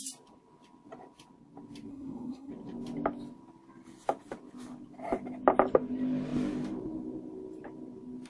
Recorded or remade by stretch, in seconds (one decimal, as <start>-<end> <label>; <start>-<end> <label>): 0.0-1.9 recorded; 1.9-2.5 remade; 2.5-8.3 recorded